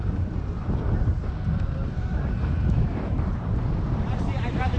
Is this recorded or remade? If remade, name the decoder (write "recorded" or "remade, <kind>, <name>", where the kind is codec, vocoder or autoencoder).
remade, vocoder, BigVGAN v2